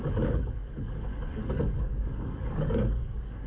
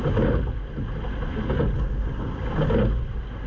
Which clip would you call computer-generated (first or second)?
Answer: first